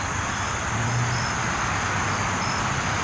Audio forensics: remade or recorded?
recorded